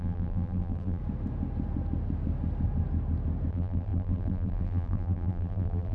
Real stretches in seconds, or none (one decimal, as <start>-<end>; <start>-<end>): 1.0-3.5